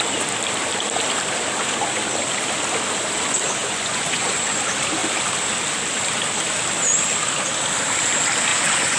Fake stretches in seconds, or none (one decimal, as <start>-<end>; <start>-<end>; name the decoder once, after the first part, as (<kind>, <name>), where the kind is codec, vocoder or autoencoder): 3.6-4.6 (vocoder, Vocos); 8.5-9.0